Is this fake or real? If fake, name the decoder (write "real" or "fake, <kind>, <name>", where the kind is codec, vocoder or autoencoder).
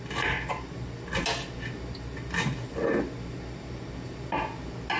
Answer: real